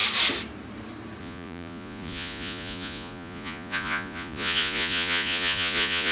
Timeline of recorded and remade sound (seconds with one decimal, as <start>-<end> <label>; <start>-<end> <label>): 0.0-1.2 recorded; 1.2-6.1 remade